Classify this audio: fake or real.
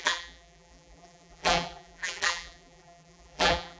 fake